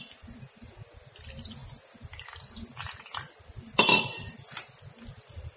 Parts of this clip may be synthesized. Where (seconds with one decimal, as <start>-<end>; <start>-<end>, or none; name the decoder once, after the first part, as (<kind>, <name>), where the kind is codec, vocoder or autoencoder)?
0.0-1.6 (vocoder, BigVGAN v2); 2.3-5.6